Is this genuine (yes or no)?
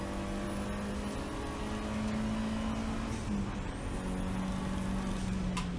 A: yes